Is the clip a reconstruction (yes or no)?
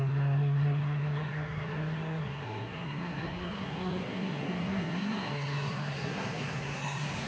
yes